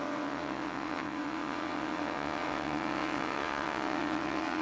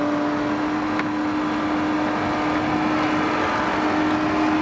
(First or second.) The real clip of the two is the second